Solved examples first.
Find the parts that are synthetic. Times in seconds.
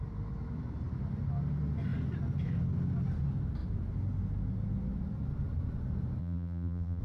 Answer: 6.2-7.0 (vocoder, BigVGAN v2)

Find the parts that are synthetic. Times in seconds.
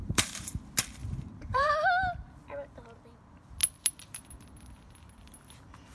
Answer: 0.0-0.6 (vocoder, BigVGAN v2); 1.0-1.7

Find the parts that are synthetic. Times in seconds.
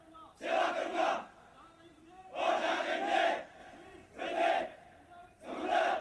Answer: 3.6-4.2 (vocoder, BigVGAN v2); 5.2-6.0